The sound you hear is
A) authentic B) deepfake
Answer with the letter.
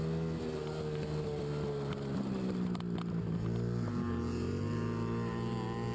A